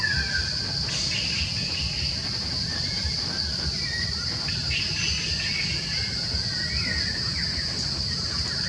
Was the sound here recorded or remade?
recorded